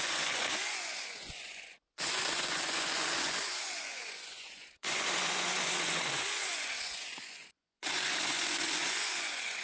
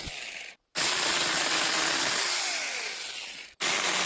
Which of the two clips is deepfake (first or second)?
first